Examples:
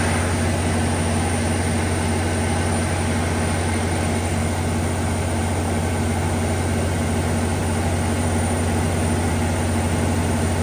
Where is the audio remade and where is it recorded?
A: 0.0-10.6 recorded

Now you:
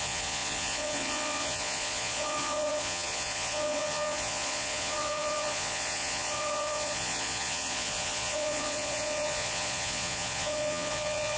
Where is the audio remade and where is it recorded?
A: 0.0-11.4 remade

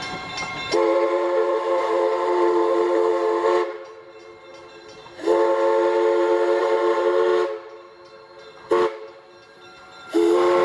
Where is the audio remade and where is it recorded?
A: 0.0-3.1 remade; 3.1-6.6 recorded; 6.6-7.3 remade; 7.3-10.1 recorded; 10.1-10.6 remade

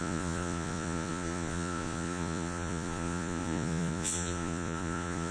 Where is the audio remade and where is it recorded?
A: 0.0-5.3 remade

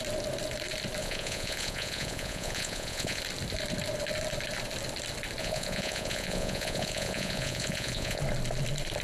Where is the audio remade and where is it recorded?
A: 0.0-1.0 recorded; 1.0-3.2 remade; 3.2-5.4 recorded; 5.4-8.2 remade; 8.2-9.0 recorded

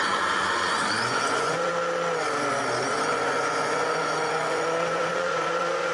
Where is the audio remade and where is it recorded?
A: 0.0-1.7 remade; 1.7-3.1 recorded; 3.1-5.9 remade